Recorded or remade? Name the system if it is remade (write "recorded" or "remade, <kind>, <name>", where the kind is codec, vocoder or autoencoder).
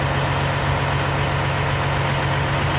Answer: recorded